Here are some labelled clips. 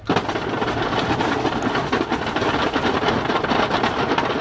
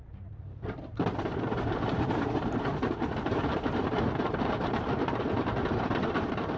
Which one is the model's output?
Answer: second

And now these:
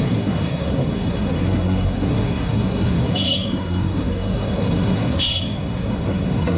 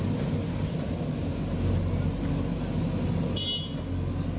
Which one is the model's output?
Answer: first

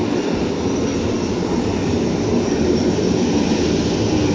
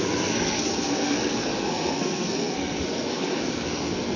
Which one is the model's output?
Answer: second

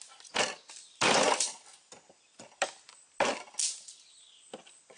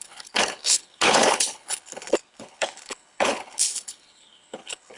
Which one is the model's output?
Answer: second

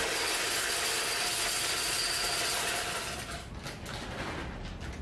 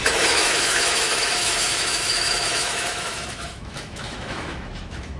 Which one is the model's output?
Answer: second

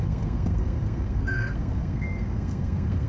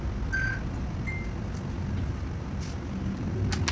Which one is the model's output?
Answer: first